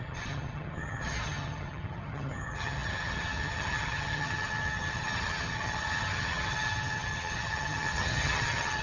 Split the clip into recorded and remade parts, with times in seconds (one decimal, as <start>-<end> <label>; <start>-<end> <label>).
0.0-8.8 remade